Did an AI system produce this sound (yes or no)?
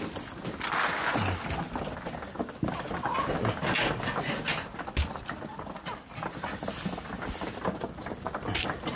no